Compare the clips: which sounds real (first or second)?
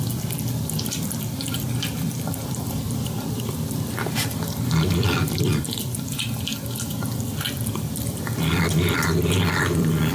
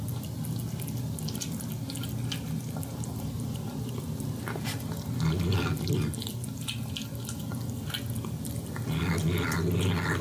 second